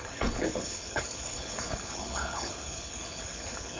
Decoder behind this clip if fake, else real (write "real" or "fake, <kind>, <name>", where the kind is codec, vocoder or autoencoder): fake, codec, HILCodec